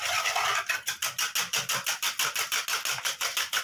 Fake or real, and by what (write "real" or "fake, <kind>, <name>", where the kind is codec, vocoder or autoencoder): real